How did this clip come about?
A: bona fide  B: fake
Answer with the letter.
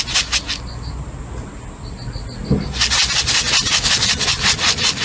A